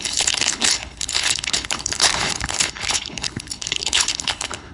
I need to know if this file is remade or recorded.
remade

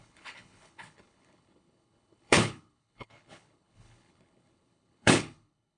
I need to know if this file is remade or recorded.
remade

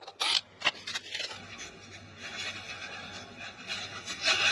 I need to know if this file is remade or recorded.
recorded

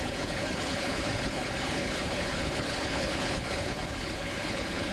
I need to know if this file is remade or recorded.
remade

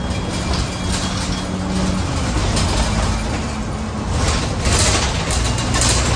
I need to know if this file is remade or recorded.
recorded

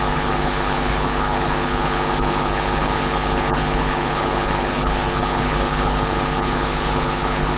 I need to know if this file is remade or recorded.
remade